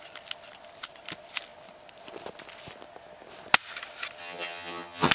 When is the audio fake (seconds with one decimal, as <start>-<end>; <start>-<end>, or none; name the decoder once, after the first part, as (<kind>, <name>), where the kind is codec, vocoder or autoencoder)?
4.2-5.1 (vocoder, HiFi-GAN)